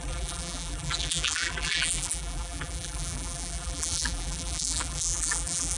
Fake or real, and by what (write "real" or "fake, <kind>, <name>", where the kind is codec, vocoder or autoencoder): fake, vocoder, BigVGAN v2